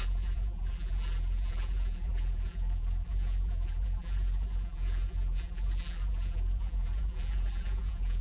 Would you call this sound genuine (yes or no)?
no